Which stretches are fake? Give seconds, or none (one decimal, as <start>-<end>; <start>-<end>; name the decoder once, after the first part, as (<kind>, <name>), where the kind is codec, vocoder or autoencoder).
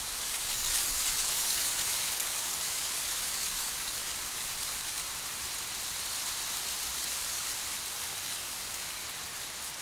0.0-5.0 (codec, DAC); 7.1-7.5; 8.0-9.0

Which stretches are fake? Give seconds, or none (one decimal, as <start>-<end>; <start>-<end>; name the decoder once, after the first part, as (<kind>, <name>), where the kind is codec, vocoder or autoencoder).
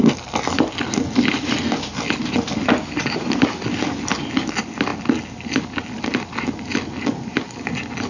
none